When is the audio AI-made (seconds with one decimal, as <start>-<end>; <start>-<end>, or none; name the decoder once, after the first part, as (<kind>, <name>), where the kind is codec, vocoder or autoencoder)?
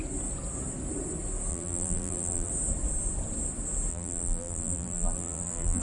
1.5-2.5 (vocoder, BigVGAN v2); 3.9-5.8